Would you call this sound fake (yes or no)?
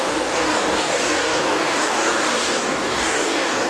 yes